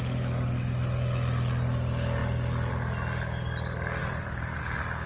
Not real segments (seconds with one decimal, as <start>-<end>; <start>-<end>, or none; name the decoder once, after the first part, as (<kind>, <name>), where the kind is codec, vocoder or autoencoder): 4.0-4.6 (vocoder, BigVGAN v2)